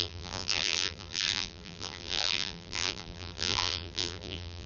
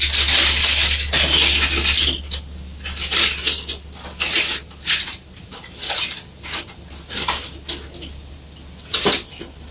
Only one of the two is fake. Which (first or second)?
first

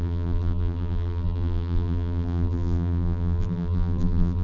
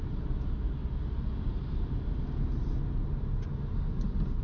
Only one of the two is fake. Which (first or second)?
first